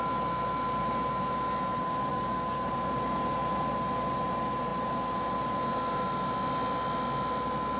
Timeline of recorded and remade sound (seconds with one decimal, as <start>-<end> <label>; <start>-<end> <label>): 0.0-2.1 recorded; 2.1-2.7 remade; 2.7-7.8 recorded